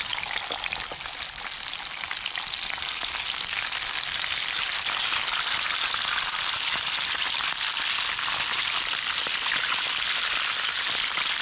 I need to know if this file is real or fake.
real